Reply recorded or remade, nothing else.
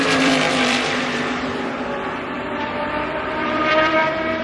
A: remade